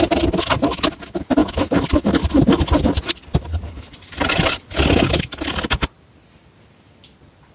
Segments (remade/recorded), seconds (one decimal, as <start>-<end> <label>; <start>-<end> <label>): 0.0-7.5 recorded